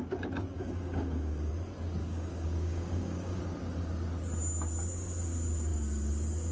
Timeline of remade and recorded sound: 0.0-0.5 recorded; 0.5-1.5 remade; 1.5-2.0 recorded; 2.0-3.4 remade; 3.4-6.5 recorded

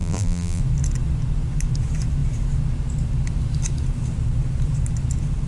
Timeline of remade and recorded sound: 0.0-0.6 remade; 0.6-5.5 recorded